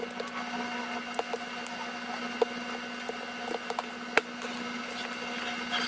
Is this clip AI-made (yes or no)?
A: no